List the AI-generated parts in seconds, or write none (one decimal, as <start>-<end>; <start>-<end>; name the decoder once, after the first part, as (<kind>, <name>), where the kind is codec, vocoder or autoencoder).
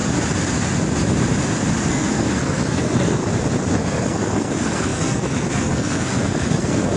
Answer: 1.9-3.2 (codec, SNAC); 3.7-7.0